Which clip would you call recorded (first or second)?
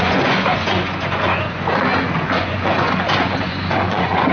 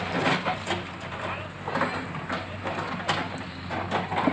second